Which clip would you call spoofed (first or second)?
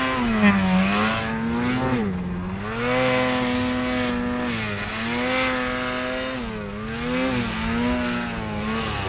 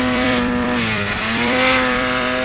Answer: second